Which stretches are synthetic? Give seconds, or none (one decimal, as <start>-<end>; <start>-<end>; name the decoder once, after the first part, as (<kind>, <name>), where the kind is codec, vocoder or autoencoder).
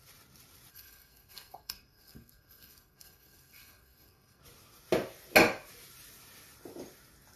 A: 0.7-4.4 (codec, SNAC)